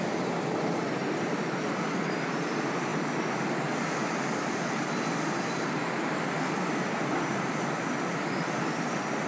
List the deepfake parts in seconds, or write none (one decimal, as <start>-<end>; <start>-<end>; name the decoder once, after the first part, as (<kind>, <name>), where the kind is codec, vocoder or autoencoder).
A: 0.0-9.3 (vocoder, BigVGAN v2)

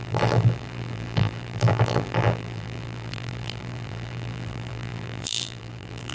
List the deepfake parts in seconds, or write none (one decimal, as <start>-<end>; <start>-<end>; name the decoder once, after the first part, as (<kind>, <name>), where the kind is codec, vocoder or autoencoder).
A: 0.0-6.1 (vocoder, BigVGAN v2)